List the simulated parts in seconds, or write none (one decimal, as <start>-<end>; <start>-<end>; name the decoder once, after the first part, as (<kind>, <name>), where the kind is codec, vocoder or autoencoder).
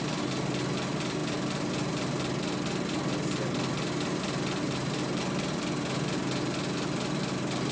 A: 4.6-5.2 (vocoder, BigVGAN v2)